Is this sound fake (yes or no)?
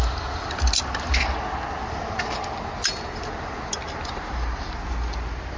no